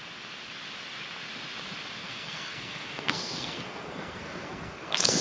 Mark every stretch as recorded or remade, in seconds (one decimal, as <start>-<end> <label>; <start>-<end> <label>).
0.0-2.0 recorded; 2.0-5.2 remade